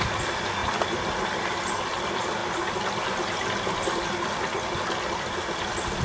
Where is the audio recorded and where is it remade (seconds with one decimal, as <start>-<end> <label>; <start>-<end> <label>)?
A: 0.0-0.6 recorded; 0.6-1.6 remade; 1.6-6.0 recorded